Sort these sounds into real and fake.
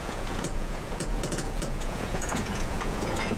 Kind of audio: fake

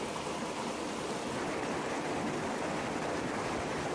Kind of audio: real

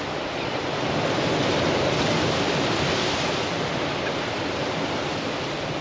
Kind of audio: real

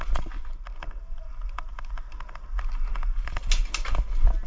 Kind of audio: real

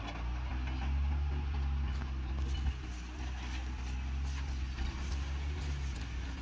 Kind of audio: real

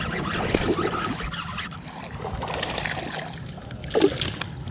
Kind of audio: real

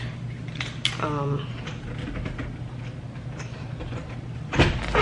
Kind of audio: real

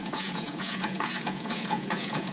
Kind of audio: fake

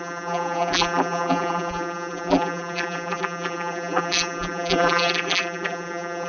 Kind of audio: fake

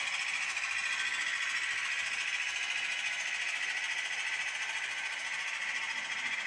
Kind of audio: real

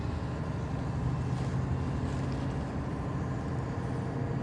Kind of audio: real